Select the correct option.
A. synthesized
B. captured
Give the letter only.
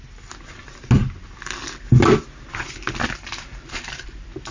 B